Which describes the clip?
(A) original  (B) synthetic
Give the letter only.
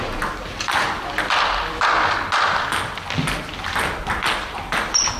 A